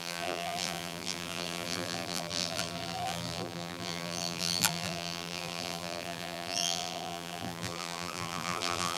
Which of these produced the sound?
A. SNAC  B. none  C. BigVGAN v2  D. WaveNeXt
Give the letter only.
C